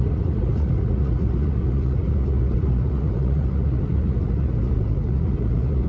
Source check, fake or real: fake